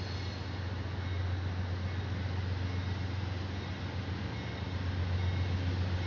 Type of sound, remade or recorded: recorded